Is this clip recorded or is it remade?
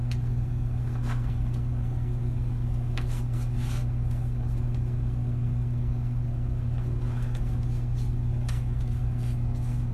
remade